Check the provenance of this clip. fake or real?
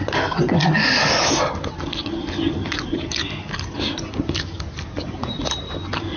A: real